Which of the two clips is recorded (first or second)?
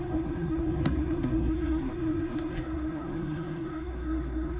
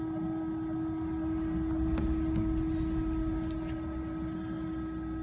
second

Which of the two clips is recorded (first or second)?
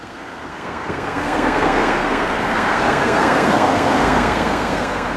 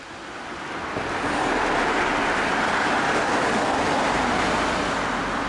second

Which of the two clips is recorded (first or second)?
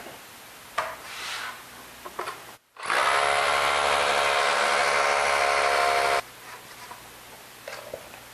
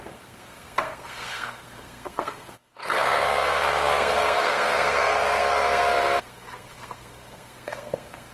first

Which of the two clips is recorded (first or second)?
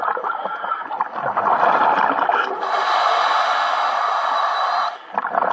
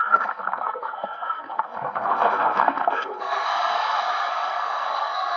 first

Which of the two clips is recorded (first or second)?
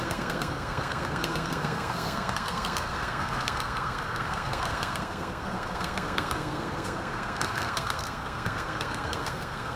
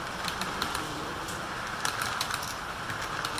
second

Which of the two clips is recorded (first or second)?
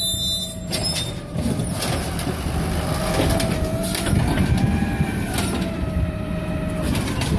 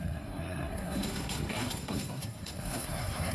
first